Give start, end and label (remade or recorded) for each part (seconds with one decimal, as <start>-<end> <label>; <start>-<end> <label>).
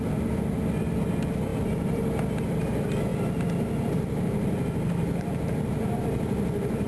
0.0-6.9 recorded